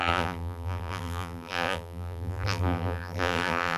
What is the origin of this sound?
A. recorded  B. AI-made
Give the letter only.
B